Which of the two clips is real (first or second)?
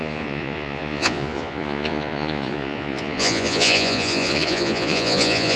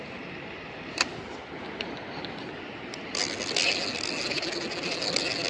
second